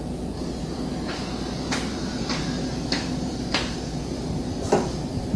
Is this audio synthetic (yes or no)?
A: yes